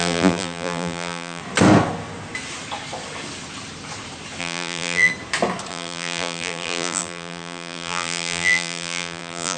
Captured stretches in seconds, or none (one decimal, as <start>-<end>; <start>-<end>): 1.4-4.4; 5.1-5.7